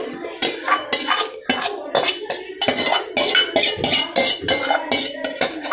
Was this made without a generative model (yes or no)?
yes